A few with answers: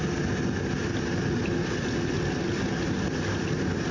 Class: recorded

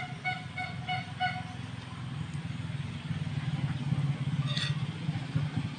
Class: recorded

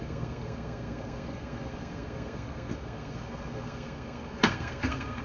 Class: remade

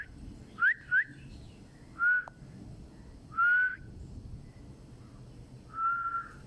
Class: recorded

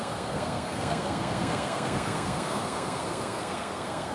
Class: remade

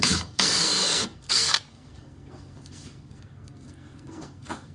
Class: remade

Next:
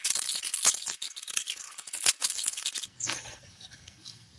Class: remade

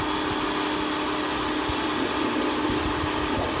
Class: recorded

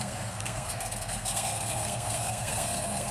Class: remade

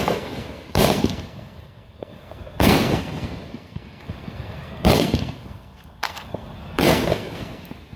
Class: remade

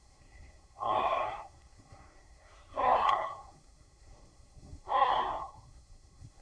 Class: remade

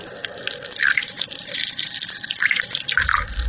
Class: recorded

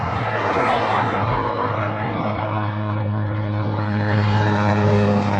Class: remade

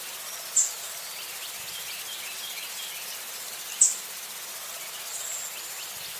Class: recorded